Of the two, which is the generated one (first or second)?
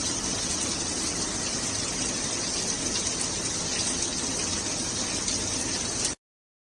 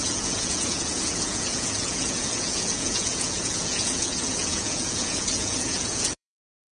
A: second